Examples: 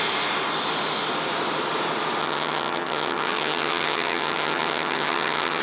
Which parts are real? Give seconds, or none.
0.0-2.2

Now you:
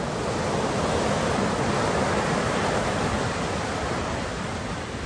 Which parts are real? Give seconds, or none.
0.0-2.9; 4.3-5.1

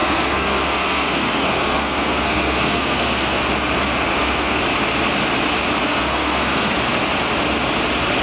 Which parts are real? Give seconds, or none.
3.4-4.1; 4.6-5.8; 6.7-8.2

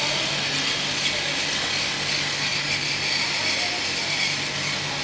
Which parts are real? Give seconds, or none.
0.0-5.0